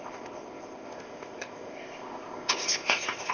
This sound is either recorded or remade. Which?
remade